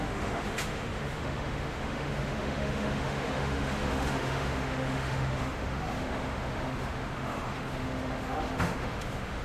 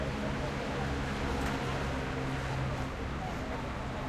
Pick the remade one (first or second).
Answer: first